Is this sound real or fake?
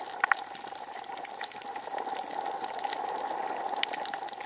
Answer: real